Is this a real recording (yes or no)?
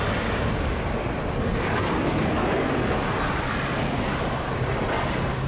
yes